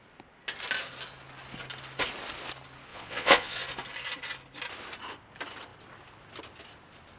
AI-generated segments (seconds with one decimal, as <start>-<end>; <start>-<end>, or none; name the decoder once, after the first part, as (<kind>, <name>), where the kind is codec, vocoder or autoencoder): 2.9-3.6 (vocoder, Vocos)